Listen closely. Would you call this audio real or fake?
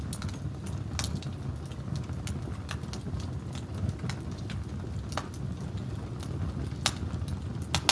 real